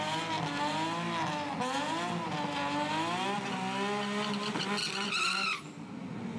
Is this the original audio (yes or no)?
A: yes